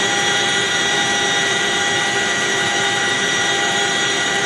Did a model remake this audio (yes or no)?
yes